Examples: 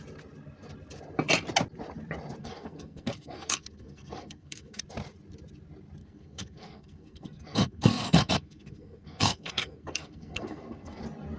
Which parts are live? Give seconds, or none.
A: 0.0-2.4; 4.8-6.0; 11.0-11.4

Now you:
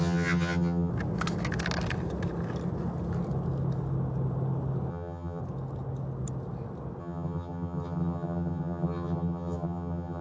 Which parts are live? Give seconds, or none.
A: 0.9-4.9; 5.4-7.0